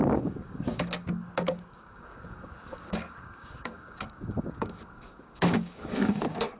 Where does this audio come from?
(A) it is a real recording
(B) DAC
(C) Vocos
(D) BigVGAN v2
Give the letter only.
B